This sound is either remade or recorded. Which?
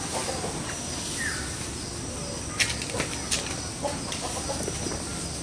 recorded